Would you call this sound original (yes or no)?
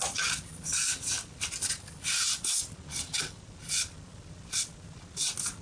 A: yes